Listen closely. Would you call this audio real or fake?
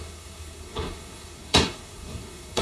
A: fake